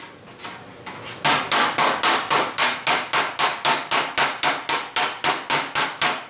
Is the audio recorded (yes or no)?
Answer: yes